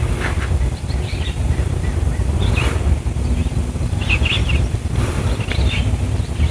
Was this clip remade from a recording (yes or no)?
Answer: yes